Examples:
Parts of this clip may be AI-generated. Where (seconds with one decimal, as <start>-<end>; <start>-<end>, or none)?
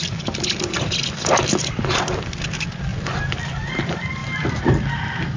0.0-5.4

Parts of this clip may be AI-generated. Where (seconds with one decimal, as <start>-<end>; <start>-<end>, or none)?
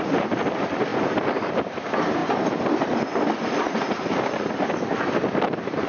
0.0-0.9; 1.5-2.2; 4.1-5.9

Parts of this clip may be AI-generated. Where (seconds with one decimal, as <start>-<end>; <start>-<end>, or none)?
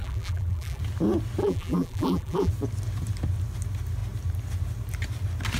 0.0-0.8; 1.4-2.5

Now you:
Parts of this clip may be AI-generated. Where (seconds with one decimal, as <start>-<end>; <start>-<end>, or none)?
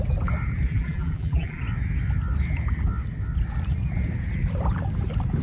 0.7-1.6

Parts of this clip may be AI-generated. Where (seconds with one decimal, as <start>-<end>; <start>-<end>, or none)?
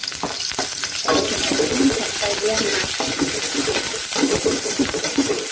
0.7-1.1; 4.4-5.5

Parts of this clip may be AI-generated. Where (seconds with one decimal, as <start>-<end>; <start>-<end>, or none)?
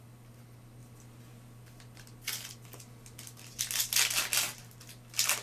none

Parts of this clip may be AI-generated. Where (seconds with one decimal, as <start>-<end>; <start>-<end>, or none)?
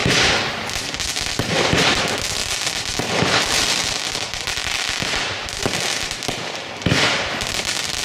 2.4-5.6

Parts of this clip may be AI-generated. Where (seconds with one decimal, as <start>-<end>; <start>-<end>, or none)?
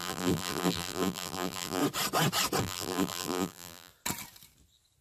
0.0-1.8; 2.6-3.9